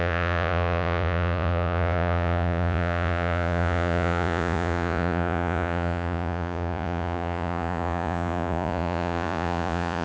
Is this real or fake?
fake